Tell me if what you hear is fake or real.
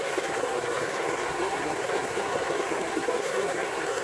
fake